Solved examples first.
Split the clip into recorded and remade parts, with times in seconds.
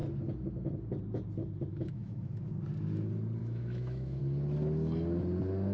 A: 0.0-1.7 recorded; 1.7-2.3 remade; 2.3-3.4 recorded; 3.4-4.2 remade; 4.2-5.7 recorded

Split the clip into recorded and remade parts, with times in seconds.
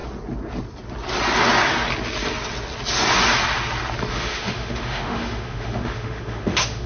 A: 0.0-4.1 recorded; 4.1-6.9 remade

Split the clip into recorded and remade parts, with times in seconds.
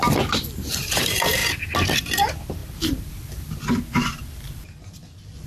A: 0.0-1.4 remade; 1.4-2.0 recorded; 2.0-5.5 remade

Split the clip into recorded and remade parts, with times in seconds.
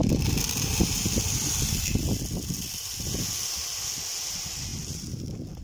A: 0.0-4.7 recorded; 4.7-5.6 remade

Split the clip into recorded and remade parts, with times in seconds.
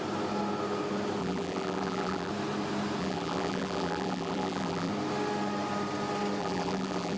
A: 0.0-1.2 recorded; 1.2-2.3 remade; 2.3-3.0 recorded; 3.0-4.9 remade; 4.9-6.4 recorded; 6.4-7.2 remade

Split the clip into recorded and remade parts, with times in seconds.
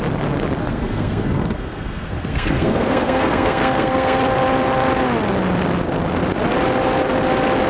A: 0.0-0.6 recorded; 0.6-4.2 remade; 4.2-7.7 recorded